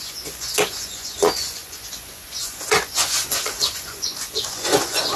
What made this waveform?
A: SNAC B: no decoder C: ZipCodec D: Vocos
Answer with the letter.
D